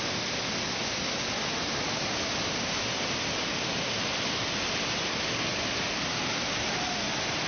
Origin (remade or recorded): recorded